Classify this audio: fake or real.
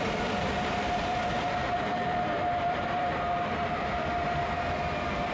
fake